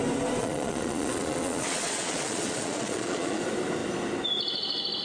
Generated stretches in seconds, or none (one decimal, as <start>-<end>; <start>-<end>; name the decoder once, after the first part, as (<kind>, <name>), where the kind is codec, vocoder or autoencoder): 0.4-3.4 (vocoder, Vocos)